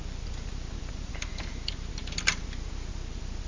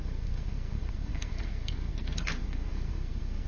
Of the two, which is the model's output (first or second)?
second